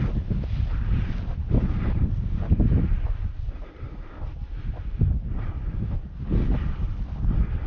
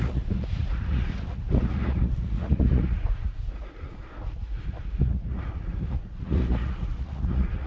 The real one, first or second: first